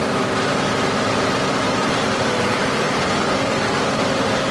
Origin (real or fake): real